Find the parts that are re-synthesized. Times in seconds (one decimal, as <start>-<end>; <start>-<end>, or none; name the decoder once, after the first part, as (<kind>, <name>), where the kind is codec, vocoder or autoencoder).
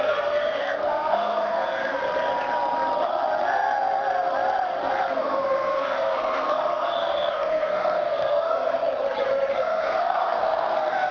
0.0-2.0 (codec, SNAC); 5.1-8.8; 9.5-11.1